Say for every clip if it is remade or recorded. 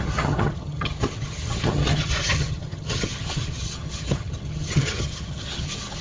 remade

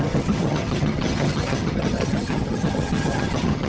remade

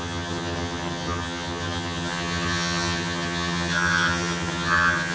remade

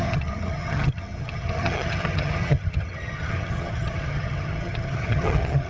remade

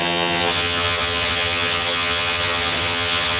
remade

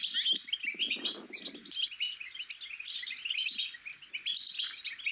recorded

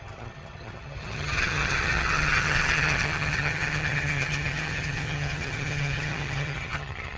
remade